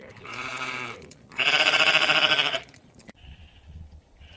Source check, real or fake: fake